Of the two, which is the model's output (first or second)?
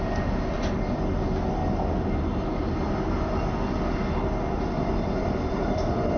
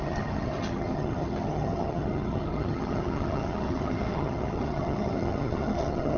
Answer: second